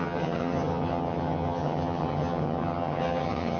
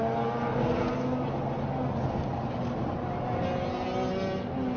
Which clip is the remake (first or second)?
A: first